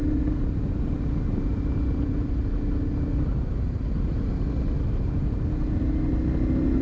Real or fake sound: real